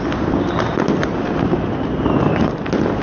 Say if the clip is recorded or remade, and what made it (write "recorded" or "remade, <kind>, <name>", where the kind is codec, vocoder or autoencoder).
recorded